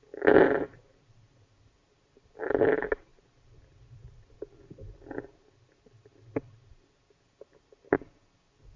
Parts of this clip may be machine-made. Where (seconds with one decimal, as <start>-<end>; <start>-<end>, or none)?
none